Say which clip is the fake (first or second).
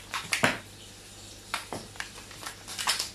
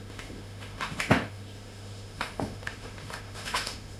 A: second